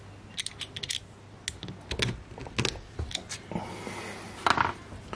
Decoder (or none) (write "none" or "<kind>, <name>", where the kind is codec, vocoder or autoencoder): none